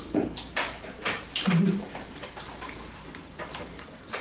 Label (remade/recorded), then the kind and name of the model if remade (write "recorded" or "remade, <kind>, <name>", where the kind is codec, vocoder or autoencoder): remade, vocoder, BigVGAN v2